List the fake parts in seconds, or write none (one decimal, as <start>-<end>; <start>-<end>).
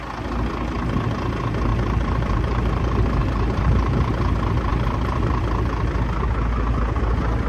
1.7-2.8; 3.2-4.1; 4.7-5.4